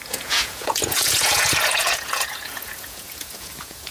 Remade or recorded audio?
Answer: remade